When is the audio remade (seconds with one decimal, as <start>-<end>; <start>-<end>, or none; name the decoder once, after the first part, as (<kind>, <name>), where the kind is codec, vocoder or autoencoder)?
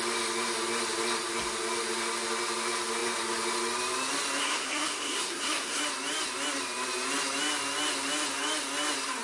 4.4-5.8 (codec, SNAC)